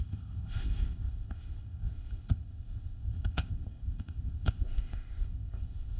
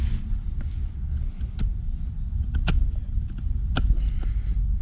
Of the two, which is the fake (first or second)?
first